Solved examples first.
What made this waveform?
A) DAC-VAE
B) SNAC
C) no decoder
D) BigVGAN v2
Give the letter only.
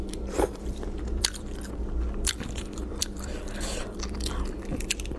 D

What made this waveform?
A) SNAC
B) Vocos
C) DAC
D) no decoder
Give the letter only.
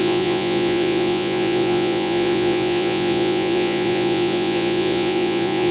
B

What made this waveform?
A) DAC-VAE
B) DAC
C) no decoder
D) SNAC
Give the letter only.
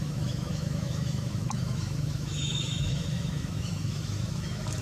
A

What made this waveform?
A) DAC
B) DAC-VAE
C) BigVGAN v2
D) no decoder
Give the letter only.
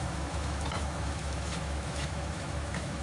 B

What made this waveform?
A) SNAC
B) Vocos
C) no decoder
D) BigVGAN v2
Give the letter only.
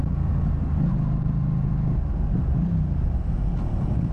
C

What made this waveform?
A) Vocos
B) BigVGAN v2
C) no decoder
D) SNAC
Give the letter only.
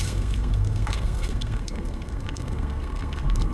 D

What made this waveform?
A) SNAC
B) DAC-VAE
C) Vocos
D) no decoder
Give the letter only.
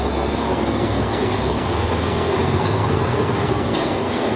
A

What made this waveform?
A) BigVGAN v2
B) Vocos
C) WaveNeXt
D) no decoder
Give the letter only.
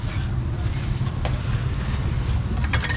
A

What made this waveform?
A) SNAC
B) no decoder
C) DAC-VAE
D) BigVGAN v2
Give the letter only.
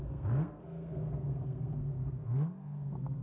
A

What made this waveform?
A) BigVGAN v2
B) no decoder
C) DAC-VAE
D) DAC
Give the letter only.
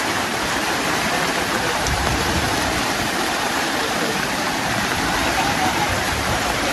A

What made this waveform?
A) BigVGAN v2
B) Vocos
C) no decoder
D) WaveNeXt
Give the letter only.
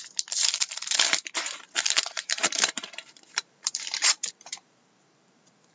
A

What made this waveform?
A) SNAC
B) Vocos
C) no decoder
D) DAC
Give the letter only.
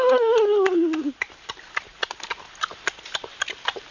C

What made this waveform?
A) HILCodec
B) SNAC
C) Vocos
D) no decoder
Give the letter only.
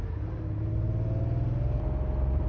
D